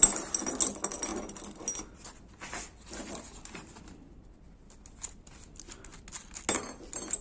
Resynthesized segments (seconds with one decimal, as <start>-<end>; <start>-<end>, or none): none